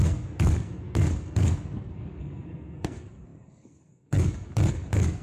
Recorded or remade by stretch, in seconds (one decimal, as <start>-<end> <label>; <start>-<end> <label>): 0.0-5.2 remade